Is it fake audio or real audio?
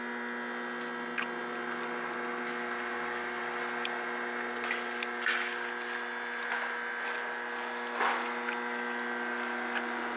real